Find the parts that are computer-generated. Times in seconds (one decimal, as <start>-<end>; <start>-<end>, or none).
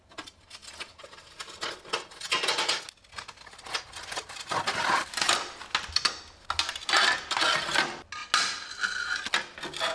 none